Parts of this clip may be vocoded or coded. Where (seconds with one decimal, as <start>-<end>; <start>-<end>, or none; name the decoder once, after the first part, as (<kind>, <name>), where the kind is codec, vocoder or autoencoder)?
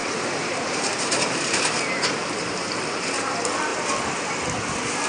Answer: 0.0-3.1 (vocoder, BigVGAN v2); 3.7-4.3